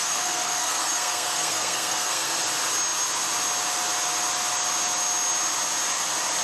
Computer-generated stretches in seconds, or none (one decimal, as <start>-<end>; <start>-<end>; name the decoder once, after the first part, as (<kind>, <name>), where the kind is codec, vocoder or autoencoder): 0.0-2.4 (codec, SNAC)